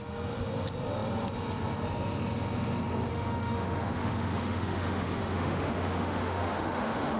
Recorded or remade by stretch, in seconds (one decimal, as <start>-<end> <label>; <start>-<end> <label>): 0.0-3.1 recorded; 3.1-7.2 remade